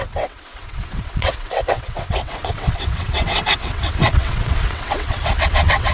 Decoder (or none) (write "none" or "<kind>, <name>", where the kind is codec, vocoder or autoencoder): vocoder, WaveNeXt